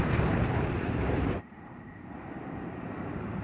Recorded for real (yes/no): no